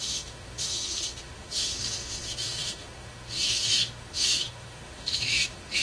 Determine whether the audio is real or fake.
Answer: fake